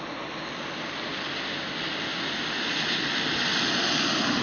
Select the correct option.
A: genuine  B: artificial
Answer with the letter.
A